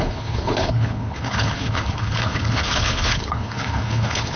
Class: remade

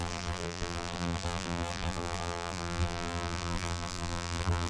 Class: remade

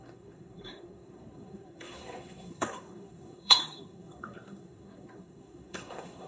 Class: remade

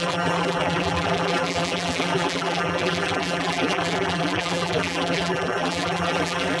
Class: remade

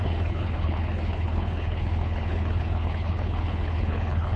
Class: remade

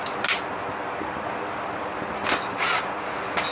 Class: recorded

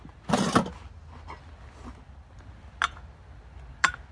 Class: recorded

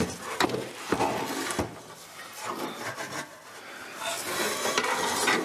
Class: recorded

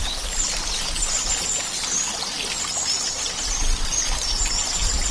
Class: recorded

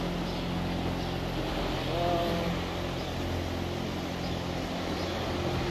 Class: recorded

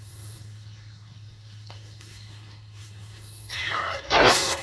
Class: remade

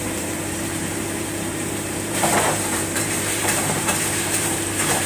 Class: remade